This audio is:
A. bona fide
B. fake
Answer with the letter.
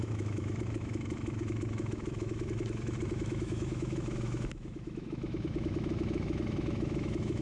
B